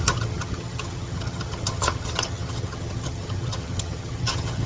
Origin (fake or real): fake